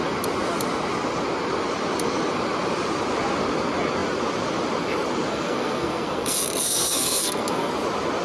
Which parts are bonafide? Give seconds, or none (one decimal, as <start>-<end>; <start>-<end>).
0.0-5.3; 7.7-8.2